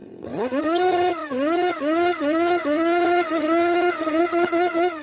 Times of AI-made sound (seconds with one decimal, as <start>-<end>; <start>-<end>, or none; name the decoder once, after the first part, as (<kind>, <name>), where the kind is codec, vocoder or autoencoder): 0.0-5.0 (vocoder, HiFi-GAN)